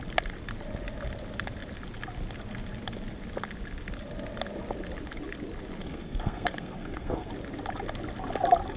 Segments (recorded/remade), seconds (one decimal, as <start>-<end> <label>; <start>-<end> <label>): 0.0-5.8 recorded; 5.8-7.3 remade; 7.3-8.8 recorded